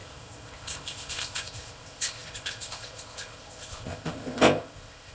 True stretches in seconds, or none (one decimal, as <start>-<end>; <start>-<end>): none